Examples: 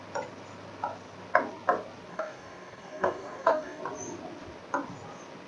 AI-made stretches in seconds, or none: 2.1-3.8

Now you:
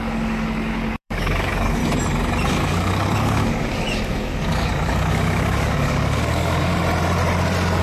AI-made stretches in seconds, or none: 0.0-1.8; 2.5-6.7

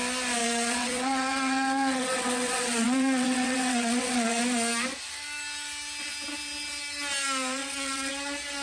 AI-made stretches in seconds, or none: 0.4-4.4; 7.6-8.1

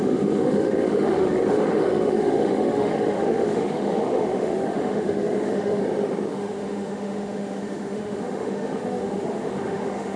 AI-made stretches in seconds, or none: 0.0-5.8; 6.3-10.2

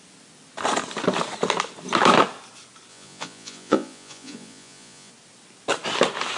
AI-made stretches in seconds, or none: 2.9-5.1

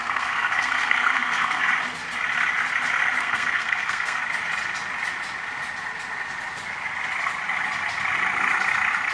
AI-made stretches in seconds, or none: 0.0-1.6; 3.2-4.2

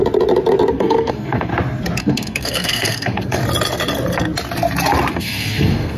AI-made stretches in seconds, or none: 0.7-1.5; 2.0-3.4; 5.1-6.0